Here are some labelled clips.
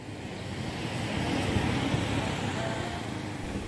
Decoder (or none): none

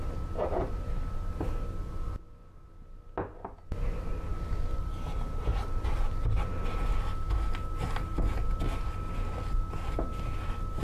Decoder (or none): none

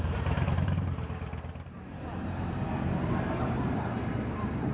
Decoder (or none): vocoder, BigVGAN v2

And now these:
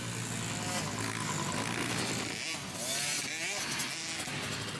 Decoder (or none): none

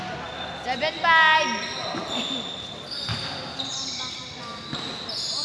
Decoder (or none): none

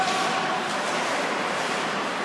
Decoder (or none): vocoder, BigVGAN v2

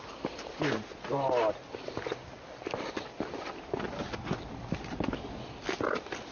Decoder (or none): vocoder, BigVGAN v2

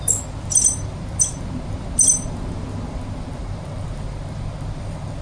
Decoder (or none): none